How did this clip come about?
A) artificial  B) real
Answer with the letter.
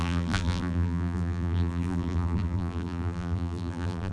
A